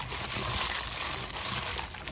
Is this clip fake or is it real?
real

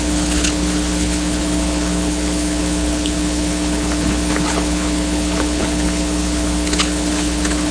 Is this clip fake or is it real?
fake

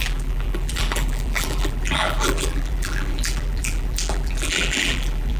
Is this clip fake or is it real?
fake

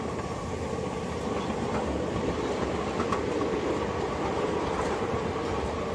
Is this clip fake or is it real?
real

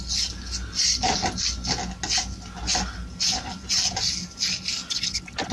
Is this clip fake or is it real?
real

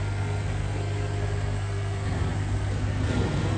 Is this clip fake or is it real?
fake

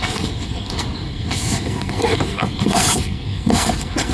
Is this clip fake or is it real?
fake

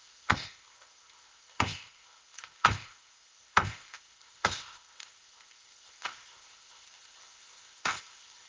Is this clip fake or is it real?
fake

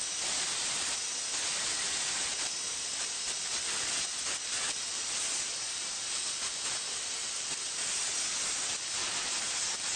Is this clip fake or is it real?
real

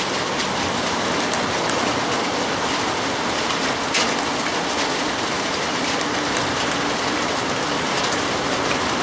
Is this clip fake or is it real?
real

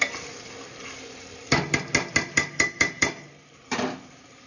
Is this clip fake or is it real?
real